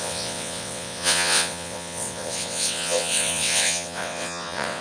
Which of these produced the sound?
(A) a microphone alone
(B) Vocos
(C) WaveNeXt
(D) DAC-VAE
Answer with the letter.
C